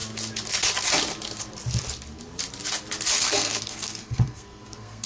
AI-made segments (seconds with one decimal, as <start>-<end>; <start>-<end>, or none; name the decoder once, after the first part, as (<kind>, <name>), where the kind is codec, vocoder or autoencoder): 3.1-5.1 (codec, SNAC)

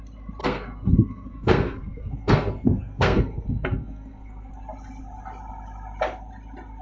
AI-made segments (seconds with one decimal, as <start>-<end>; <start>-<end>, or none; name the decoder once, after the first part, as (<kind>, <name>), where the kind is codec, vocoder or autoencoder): 0.4-4.5 (codec, SNAC)

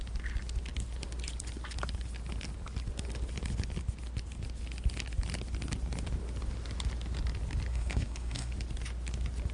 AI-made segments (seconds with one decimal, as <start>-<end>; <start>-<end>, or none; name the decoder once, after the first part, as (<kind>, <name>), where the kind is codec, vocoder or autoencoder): 7.7-8.5 (codec, SNAC)

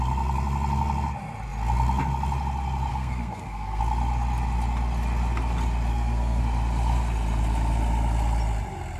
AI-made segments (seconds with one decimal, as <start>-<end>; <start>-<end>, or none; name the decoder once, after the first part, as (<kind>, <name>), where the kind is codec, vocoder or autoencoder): 2.9-3.8 (codec, SNAC); 5.9-6.4